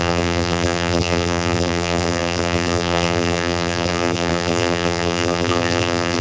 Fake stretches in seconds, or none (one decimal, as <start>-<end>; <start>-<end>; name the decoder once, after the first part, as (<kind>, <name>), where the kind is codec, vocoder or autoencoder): 0.0-6.2 (vocoder, BigVGAN v2)